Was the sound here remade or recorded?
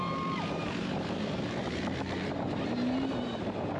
remade